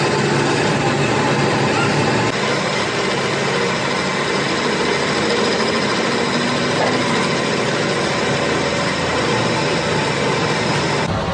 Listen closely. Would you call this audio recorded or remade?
recorded